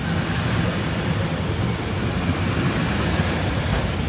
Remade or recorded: recorded